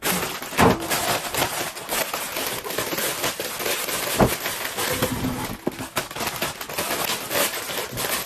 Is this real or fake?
real